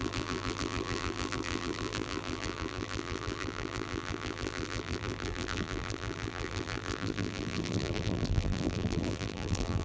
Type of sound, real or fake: fake